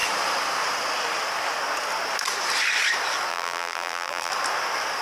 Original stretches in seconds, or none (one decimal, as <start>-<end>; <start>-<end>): 0.0-3.3; 4.3-5.0